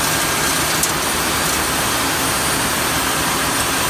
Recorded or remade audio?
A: recorded